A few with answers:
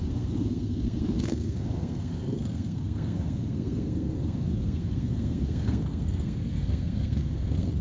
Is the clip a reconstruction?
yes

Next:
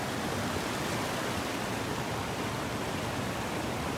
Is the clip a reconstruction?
no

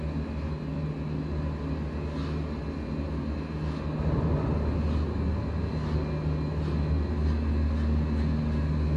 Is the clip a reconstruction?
no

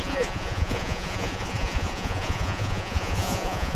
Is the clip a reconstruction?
yes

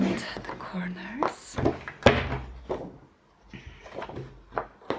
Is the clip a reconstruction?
no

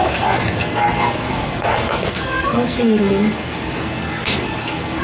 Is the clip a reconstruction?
yes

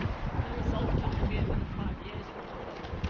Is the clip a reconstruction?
yes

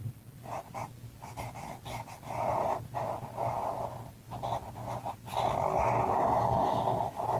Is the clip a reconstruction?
no